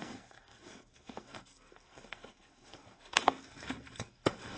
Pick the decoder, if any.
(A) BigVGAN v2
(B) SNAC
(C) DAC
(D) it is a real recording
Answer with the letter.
B